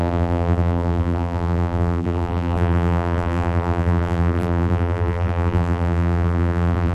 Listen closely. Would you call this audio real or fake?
fake